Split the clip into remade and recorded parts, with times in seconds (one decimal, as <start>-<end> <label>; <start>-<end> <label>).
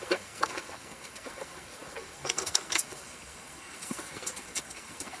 0.0-5.2 remade